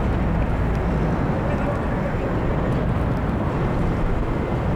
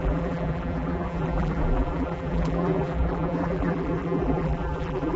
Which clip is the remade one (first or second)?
second